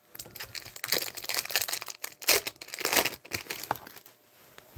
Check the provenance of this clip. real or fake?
real